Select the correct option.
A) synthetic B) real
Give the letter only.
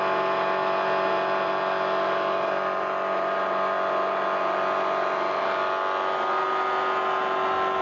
B